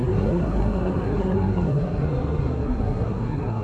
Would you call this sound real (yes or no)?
no